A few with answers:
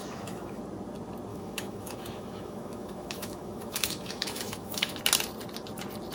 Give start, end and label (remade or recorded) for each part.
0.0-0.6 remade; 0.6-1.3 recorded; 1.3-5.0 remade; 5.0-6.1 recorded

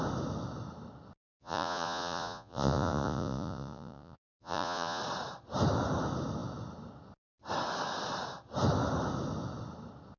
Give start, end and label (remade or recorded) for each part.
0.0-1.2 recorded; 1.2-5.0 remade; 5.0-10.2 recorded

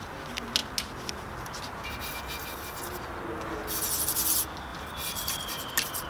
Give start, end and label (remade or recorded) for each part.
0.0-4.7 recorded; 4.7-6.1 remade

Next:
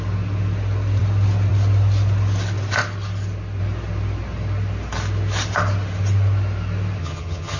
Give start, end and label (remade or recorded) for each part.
0.0-7.0 recorded; 7.0-7.6 remade

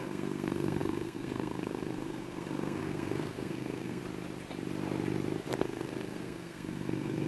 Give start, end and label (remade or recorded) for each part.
0.0-4.0 remade; 4.0-5.6 recorded; 5.6-7.3 remade

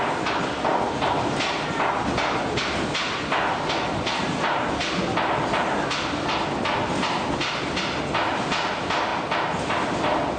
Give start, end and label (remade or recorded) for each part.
0.0-10.4 recorded

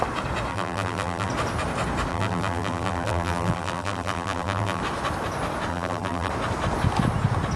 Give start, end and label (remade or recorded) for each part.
0.0-0.5 recorded; 0.5-1.3 remade; 1.3-2.1 recorded; 2.1-4.8 remade; 4.8-5.7 recorded; 5.7-6.3 remade; 6.3-7.6 recorded

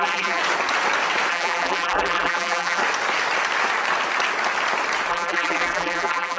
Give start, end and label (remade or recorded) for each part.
0.0-0.4 remade; 0.4-1.3 recorded; 1.3-2.8 remade; 2.8-5.1 recorded; 5.1-6.4 remade